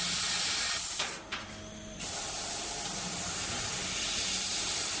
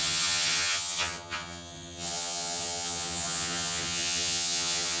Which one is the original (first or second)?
first